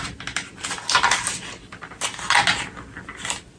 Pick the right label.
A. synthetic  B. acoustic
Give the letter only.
B